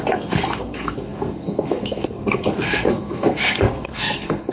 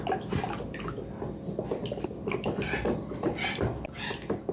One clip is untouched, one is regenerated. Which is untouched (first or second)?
second